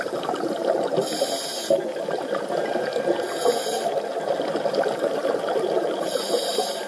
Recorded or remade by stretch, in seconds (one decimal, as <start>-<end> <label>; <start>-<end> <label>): 0.0-0.6 remade; 0.6-4.7 recorded; 4.7-6.9 remade